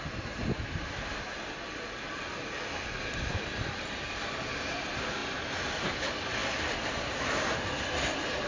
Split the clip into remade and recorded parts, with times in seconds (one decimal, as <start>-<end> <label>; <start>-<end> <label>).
0.0-8.5 recorded